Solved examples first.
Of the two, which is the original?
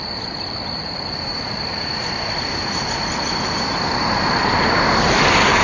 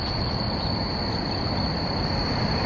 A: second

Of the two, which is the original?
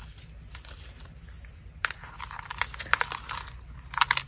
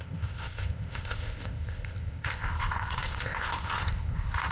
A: first